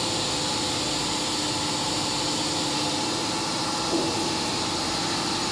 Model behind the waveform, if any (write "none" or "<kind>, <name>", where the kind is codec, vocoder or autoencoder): vocoder, BigVGAN v2